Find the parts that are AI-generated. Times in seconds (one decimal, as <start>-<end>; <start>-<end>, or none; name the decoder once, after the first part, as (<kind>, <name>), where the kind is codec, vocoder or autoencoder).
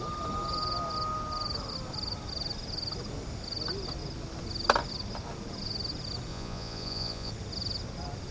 6.3-7.3 (vocoder, Vocos)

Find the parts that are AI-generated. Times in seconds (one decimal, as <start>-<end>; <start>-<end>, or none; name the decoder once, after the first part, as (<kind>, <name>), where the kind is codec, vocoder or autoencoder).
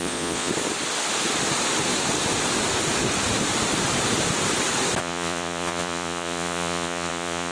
0.0-0.5 (vocoder, Vocos); 5.0-7.5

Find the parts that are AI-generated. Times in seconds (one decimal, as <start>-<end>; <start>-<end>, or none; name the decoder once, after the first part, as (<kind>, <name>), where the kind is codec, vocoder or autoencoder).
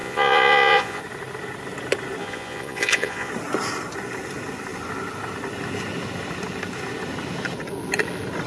0.0-1.0 (vocoder, Vocos); 2.2-3.3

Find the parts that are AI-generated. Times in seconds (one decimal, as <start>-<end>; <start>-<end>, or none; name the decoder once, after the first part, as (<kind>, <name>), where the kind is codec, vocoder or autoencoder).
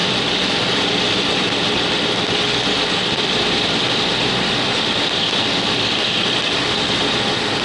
none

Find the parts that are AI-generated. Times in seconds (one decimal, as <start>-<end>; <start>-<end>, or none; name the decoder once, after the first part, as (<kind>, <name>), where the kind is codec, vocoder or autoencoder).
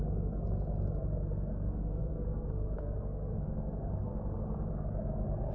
1.5-4.1 (codec, SNAC)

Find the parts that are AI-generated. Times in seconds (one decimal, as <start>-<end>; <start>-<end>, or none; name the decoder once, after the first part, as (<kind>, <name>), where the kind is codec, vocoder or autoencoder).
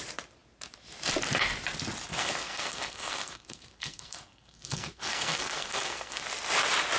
2.1-6.2 (codec, SNAC)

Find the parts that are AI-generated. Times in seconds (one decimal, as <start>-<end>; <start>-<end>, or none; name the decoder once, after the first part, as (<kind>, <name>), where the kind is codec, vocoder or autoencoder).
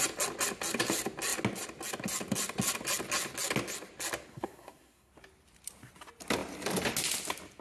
4.3-5.1 (codec, SNAC)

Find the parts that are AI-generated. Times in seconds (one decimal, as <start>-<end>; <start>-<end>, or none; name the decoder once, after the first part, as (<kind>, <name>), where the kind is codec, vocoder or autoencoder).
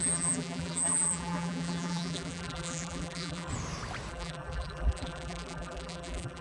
0.0-3.5 (vocoder, BigVGAN v2); 4.1-6.4